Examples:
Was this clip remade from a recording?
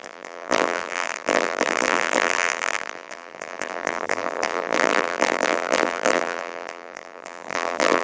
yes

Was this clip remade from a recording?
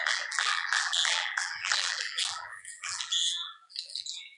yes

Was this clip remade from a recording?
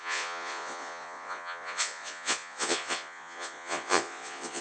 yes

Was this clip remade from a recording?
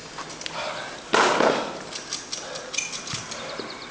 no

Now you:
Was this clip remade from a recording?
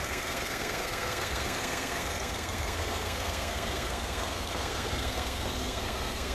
yes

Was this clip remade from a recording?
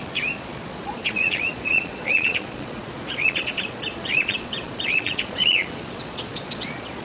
yes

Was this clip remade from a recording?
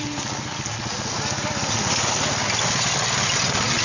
no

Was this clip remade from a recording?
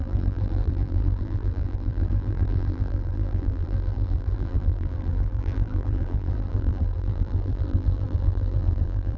yes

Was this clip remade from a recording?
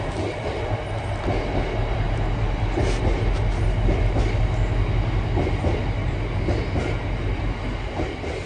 no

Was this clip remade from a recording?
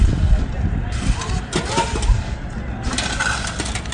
no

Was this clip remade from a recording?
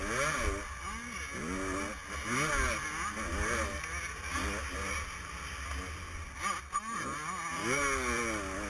no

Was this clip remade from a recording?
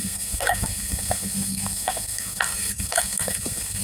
yes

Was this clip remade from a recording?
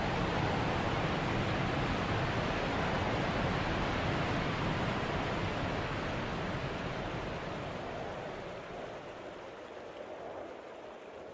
no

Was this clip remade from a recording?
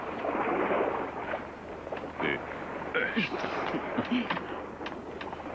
no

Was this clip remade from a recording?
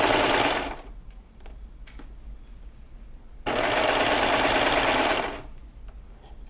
no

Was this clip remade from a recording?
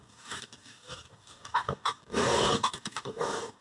yes